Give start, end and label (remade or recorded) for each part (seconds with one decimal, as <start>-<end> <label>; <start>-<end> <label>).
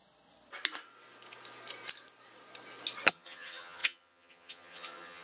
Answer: 0.0-3.1 recorded; 3.1-5.2 remade